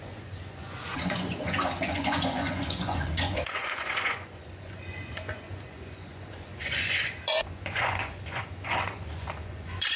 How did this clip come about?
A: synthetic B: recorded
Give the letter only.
A